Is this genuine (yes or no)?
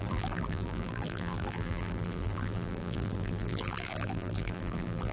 no